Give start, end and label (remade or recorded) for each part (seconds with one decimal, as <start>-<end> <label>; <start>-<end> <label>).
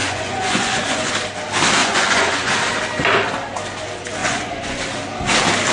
0.0-1.1 remade; 1.1-1.8 recorded; 1.8-2.5 remade; 2.5-4.2 recorded; 4.2-4.8 remade; 4.8-5.7 recorded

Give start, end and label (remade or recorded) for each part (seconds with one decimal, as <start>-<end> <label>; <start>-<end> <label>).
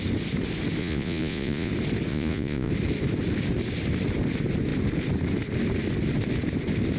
0.0-0.8 recorded; 0.8-1.7 remade; 1.7-2.1 recorded; 2.1-2.7 remade; 2.7-7.0 recorded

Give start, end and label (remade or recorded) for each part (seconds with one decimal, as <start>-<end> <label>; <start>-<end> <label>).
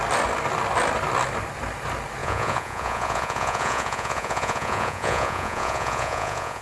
0.0-2.2 recorded; 2.2-6.6 remade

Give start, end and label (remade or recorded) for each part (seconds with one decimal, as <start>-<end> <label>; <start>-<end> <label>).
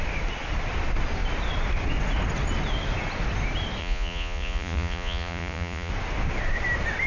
0.0-3.8 recorded; 3.8-5.9 remade; 5.9-7.1 recorded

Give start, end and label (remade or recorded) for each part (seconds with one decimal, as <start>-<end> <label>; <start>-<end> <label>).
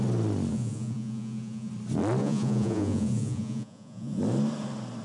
0.0-0.5 recorded; 0.5-1.7 remade; 1.7-2.2 recorded; 2.2-4.2 remade; 4.2-5.0 recorded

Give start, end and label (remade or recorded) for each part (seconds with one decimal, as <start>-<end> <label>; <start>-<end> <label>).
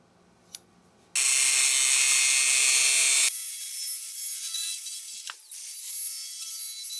0.0-7.0 recorded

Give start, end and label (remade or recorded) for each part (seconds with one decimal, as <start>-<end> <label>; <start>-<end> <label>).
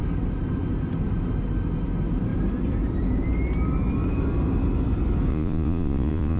0.0-5.3 recorded; 5.3-6.4 remade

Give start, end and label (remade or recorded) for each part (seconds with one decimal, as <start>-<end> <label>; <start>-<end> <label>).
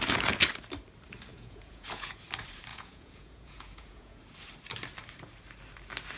0.0-1.3 recorded; 1.3-2.2 remade; 2.2-2.7 recorded; 2.7-4.2 remade; 4.2-6.2 recorded